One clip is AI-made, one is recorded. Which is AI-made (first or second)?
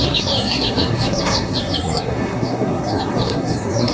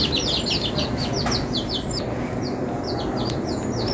first